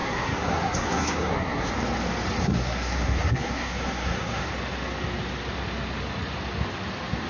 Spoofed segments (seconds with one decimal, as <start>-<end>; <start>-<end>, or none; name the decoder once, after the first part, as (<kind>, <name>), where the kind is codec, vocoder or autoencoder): 0.0-1.7 (codec, SNAC); 2.4-4.5